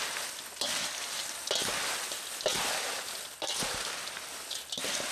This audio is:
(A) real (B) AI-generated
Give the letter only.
A